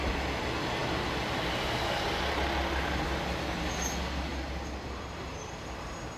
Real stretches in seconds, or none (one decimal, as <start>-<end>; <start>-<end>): 0.0-6.2